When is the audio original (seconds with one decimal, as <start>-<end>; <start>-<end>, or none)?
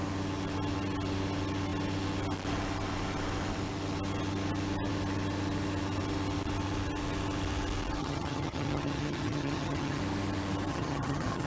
0.0-8.0; 10.0-10.7